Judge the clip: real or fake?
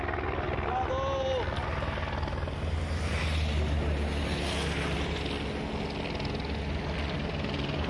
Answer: real